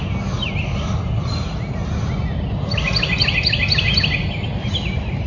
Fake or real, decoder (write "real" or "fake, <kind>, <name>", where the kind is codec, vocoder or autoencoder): real